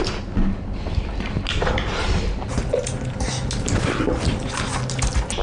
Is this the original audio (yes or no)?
yes